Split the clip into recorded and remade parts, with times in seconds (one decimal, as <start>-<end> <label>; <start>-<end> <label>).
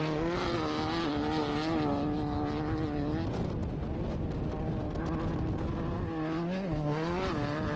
0.0-7.8 recorded